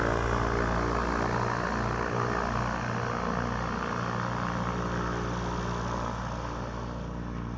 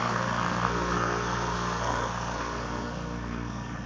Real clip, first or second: first